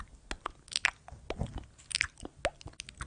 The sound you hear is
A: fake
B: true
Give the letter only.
B